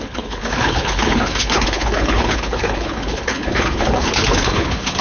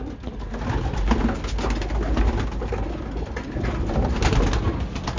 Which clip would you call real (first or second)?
second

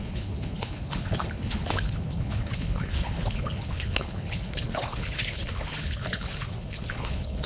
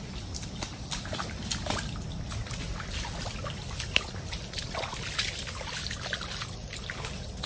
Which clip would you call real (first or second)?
second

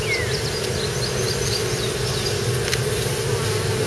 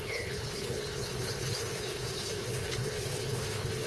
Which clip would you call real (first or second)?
first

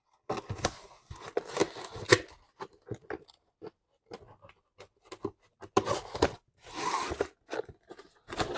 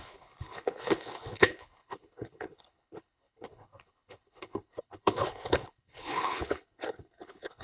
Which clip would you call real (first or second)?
first